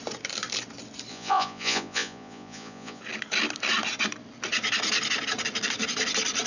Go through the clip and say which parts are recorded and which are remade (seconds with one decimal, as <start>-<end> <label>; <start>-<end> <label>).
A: 0.0-1.1 recorded; 1.1-3.0 remade; 3.0-6.5 recorded